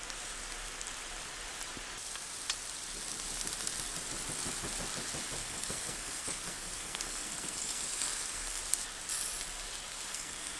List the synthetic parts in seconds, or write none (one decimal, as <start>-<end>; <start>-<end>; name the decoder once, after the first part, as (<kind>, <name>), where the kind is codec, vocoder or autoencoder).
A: 5.4-8.6 (codec, SNAC); 10.1-10.6